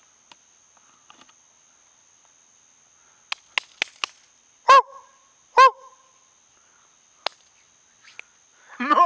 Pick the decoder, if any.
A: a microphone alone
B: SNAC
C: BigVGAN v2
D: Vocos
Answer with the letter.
A